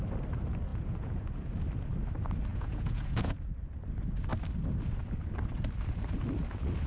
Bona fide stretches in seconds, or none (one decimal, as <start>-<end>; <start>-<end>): 0.0-0.7; 1.5-2.5; 3.5-6.9